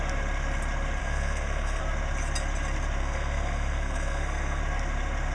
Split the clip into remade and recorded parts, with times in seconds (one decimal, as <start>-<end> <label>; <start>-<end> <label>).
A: 0.0-1.0 recorded; 1.0-1.8 remade; 1.8-3.0 recorded; 3.0-4.6 remade; 4.6-5.3 recorded